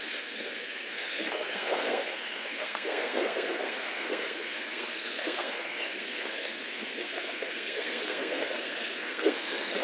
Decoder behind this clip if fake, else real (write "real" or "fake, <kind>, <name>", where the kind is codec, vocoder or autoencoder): fake, codec, SNAC